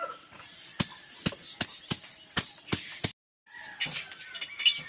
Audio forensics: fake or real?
real